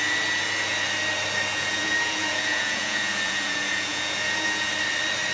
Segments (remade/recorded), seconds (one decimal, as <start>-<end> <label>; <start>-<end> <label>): 0.0-1.5 recorded; 1.5-4.7 remade; 4.7-5.3 recorded